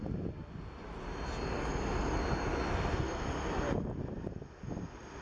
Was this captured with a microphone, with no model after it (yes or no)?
yes